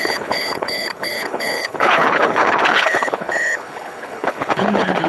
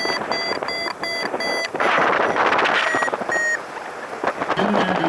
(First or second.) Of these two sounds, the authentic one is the second